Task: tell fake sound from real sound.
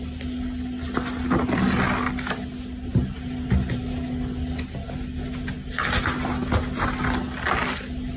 real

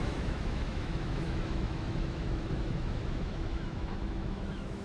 fake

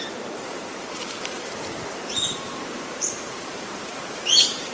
fake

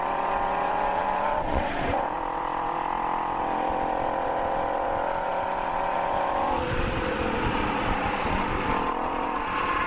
fake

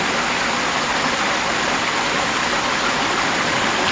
real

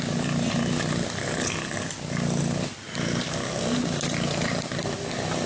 real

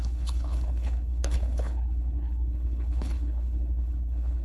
fake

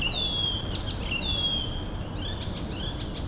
real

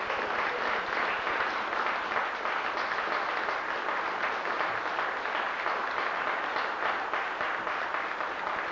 real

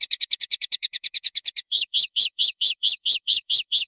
fake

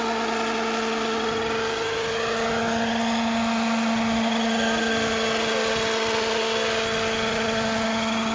real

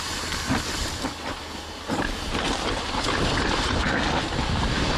real